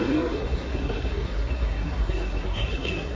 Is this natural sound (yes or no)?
no